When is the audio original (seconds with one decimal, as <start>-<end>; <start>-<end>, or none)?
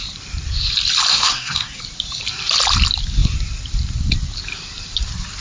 0.0-1.1; 1.8-5.4